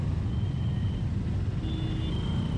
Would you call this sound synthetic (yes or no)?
no